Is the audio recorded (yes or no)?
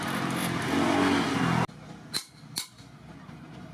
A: yes